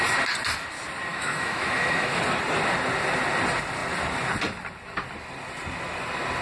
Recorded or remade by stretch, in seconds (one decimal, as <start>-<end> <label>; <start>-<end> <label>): 0.0-1.1 recorded; 1.1-2.2 remade; 2.2-6.4 recorded